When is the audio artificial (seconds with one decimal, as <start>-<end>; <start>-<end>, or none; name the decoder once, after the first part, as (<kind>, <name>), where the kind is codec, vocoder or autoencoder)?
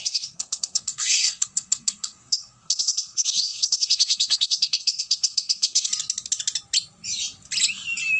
0.0-5.9 (codec, SNAC)